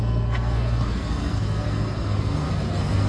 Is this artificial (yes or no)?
yes